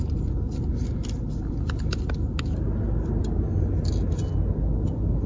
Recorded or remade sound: recorded